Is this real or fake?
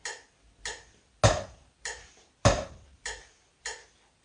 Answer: real